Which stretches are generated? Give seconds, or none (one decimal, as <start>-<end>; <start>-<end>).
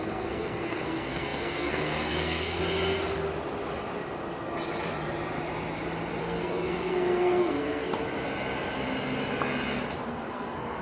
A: 0.0-2.6; 6.2-7.9; 10.1-10.8